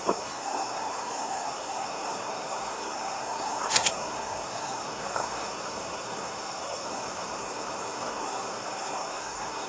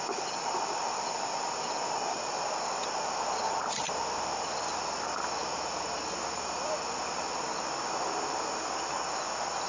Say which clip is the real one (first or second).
second